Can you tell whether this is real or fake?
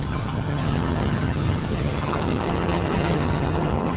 fake